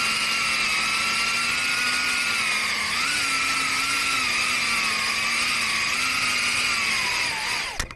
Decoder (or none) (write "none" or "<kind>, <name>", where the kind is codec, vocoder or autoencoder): none